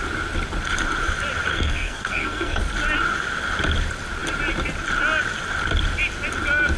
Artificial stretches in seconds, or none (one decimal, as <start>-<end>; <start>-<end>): 1.5-2.6